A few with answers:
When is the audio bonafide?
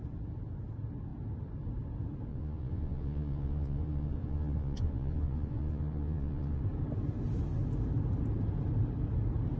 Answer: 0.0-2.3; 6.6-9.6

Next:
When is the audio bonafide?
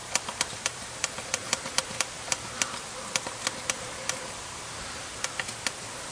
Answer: 2.1-3.6; 4.9-6.1